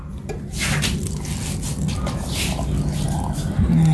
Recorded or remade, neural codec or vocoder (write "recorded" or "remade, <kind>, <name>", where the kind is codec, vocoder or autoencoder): recorded